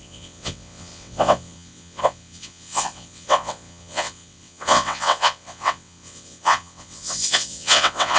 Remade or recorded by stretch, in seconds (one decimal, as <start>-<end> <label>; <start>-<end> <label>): 0.0-8.2 remade